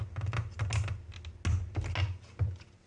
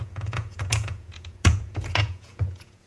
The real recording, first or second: first